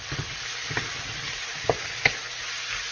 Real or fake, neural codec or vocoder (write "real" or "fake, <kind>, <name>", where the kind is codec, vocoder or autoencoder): real